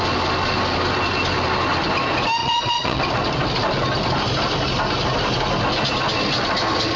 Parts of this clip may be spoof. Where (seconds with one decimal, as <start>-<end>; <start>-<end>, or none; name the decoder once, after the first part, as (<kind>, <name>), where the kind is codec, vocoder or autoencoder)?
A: 2.4-3.0 (vocoder, Vocos)